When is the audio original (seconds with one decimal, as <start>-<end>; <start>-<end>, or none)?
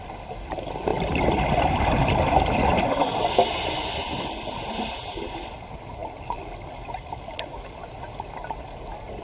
0.0-0.9; 5.5-9.2